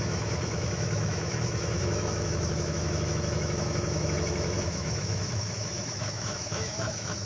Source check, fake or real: fake